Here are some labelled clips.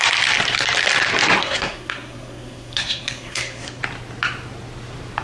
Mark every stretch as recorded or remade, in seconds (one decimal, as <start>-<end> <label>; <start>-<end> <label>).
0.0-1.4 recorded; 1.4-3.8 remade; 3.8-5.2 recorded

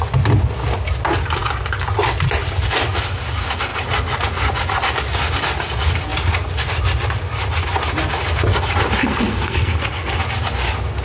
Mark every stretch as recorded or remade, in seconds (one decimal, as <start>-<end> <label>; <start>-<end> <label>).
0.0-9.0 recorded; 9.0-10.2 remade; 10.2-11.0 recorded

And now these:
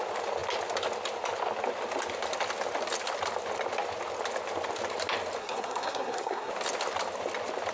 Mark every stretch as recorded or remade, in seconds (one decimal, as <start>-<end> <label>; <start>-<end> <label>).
0.0-5.4 recorded; 5.4-6.5 remade; 6.5-7.7 recorded

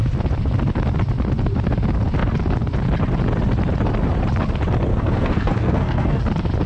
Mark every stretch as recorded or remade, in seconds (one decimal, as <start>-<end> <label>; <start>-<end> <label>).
0.0-4.9 recorded; 4.9-6.2 remade; 6.2-6.7 recorded

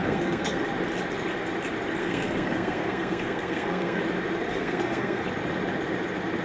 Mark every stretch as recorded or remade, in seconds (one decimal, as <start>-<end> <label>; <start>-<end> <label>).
0.0-0.6 remade; 0.6-2.0 recorded; 2.0-4.0 remade; 4.0-4.5 recorded; 4.5-5.2 remade; 5.2-6.4 recorded